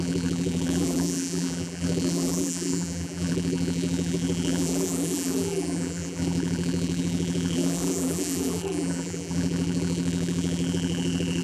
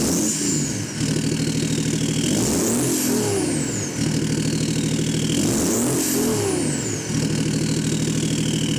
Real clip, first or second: second